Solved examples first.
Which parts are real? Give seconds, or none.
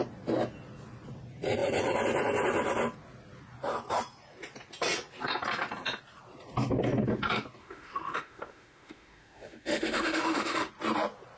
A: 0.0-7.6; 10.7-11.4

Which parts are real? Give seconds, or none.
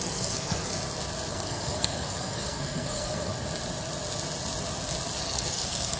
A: 0.7-1.3; 3.3-5.2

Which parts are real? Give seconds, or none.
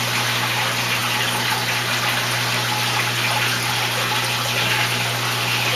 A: 0.0-5.8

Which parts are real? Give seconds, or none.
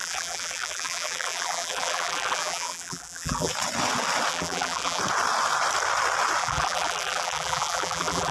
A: 3.5-4.3; 5.0-6.4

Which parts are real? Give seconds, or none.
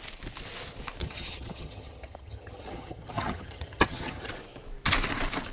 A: 0.0-1.0; 4.3-5.5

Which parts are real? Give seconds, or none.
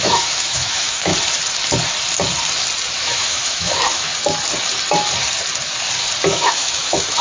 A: 1.1-2.9; 4.1-6.3